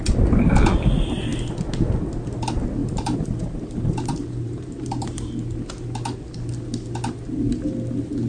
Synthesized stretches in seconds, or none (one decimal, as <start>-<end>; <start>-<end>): 2.8-5.3